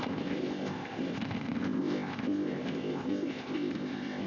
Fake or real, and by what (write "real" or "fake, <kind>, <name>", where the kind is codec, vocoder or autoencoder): fake, codec, ZipCodec